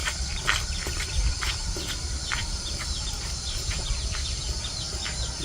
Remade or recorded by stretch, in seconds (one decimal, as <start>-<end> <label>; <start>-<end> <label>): 0.0-2.4 recorded; 2.4-4.7 remade; 4.7-5.4 recorded

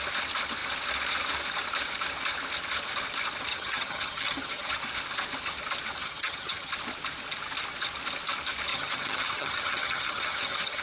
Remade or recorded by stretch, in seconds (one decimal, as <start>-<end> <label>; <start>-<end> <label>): 0.0-3.5 recorded; 3.5-4.7 remade; 4.7-6.0 recorded; 6.0-6.7 remade; 6.7-8.7 recorded; 8.7-10.8 remade